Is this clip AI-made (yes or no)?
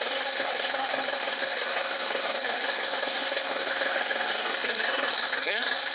yes